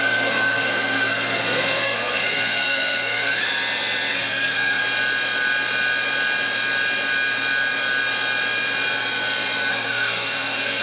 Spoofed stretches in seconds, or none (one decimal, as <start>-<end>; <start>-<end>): 0.0-3.4; 4.1-4.8; 9.7-10.8